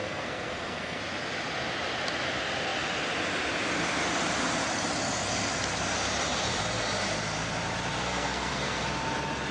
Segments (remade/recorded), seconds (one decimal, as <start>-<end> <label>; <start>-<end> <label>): 0.0-1.0 remade; 1.0-8.0 recorded; 8.0-8.9 remade; 8.9-9.5 recorded